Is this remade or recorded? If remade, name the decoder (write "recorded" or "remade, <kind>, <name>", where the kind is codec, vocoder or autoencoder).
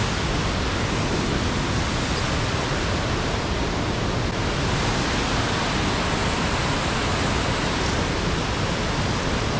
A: recorded